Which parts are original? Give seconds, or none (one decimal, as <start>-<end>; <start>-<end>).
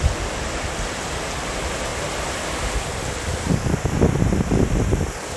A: 0.0-5.4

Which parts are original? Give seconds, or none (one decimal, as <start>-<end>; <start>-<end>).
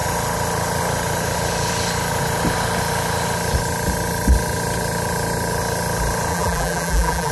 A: 0.0-6.3